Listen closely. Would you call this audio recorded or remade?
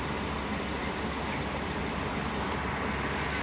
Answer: recorded